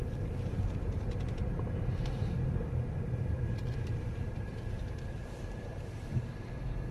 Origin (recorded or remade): remade